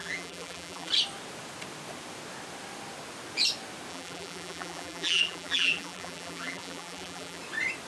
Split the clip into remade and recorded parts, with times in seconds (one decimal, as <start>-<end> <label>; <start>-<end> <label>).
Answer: 0.0-0.9 remade; 0.9-3.9 recorded; 3.9-7.4 remade; 7.4-7.9 recorded